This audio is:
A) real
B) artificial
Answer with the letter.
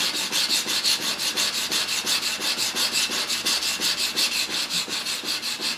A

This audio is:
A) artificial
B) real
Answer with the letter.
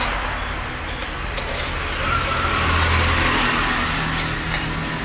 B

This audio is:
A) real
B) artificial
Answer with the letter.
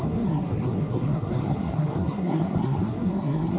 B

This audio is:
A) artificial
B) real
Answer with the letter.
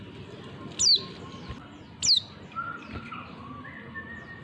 B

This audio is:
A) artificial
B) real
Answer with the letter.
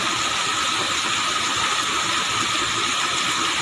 B